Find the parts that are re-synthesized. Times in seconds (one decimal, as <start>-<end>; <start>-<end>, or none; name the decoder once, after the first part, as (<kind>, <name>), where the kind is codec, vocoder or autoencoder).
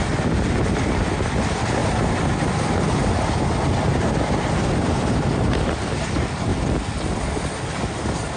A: 1.8-2.5 (vocoder, BigVGAN v2)